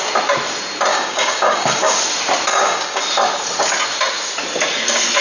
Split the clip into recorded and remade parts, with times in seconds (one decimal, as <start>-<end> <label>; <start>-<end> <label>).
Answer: 0.0-0.9 recorded; 0.9-2.0 remade; 2.0-2.5 recorded; 2.5-3.0 remade; 3.0-5.2 recorded